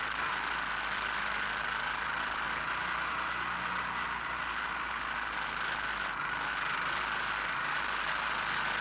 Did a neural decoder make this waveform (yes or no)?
no